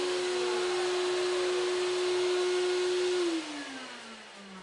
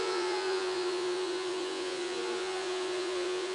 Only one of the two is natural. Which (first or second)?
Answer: first